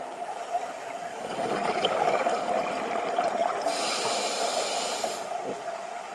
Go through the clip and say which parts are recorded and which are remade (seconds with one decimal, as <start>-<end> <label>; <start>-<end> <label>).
0.0-1.1 recorded; 1.1-2.5 remade; 2.5-6.1 recorded